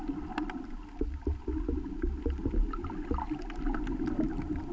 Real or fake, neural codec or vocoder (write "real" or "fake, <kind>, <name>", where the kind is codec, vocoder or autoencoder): real